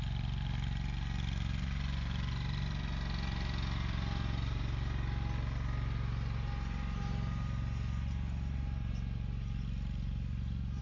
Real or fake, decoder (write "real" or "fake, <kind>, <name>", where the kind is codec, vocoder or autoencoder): real